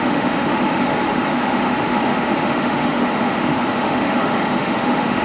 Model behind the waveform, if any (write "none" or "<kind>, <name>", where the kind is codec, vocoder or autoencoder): autoencoder, DAC-VAE